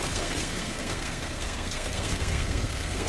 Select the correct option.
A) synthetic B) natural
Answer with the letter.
A